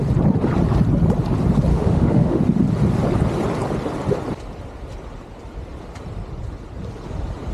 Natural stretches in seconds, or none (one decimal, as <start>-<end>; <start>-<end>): 0.0-1.7; 2.4-7.5